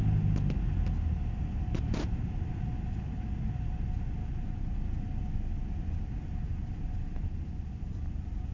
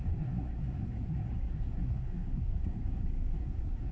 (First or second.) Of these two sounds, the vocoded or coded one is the second